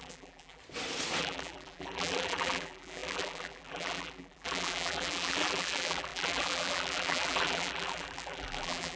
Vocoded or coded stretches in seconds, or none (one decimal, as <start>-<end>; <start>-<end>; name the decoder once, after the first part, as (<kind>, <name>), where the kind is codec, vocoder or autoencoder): 0.0-0.6 (vocoder, BigVGAN v2); 1.2-9.0